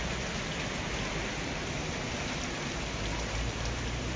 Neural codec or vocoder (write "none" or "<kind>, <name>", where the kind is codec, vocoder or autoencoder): none